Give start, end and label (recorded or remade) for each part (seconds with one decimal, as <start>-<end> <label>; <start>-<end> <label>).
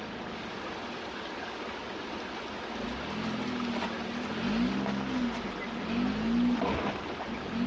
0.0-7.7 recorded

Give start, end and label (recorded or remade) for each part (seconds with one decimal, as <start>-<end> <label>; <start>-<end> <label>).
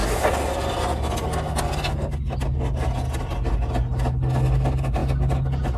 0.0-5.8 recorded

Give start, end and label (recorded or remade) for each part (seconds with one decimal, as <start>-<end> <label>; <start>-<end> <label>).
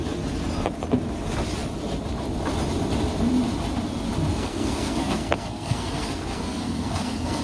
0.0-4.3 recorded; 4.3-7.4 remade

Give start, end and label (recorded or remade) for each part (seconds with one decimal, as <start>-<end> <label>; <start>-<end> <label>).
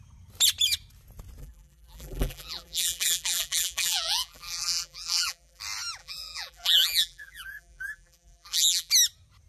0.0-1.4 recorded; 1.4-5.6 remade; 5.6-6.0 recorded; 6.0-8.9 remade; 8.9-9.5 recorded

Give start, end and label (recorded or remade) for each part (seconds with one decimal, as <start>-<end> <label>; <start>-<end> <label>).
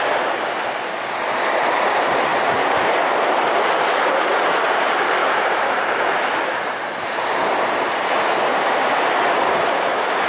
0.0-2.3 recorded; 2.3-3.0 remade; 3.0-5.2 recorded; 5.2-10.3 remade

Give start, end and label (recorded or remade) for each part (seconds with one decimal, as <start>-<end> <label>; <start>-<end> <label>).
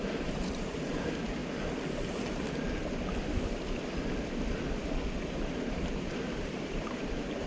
0.0-1.4 remade; 1.4-5.2 recorded; 5.2-7.5 remade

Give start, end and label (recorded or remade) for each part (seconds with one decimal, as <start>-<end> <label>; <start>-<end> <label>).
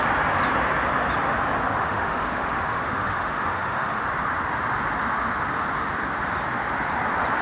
0.0-1.8 recorded; 1.8-4.0 remade; 4.0-7.4 recorded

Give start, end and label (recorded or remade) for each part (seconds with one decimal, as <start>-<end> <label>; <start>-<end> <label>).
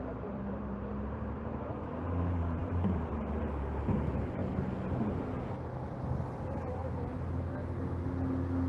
0.0-4.4 remade; 4.4-6.2 recorded; 6.2-6.8 remade; 6.8-8.7 recorded